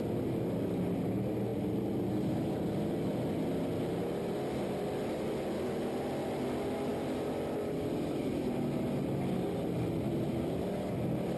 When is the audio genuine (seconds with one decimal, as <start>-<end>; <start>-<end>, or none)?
0.0-11.4